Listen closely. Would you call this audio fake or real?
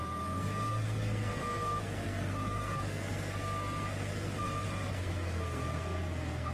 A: fake